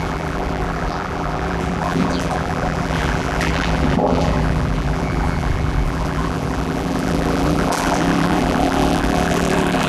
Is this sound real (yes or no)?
no